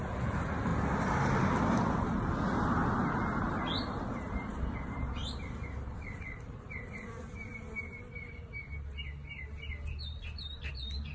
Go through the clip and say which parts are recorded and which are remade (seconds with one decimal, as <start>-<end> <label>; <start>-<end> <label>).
0.0-0.7 remade; 0.7-2.4 recorded; 2.4-5.2 remade; 5.2-6.0 recorded; 6.0-7.5 remade; 7.5-10.7 recorded; 10.7-11.1 remade